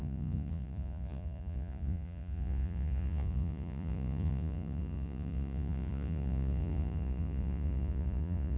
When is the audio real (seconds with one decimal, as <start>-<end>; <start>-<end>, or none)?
none